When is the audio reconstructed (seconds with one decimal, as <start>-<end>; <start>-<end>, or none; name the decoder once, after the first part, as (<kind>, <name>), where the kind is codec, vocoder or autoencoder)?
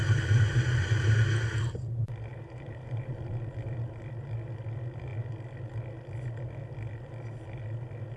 2.3-3.4 (vocoder, BigVGAN v2)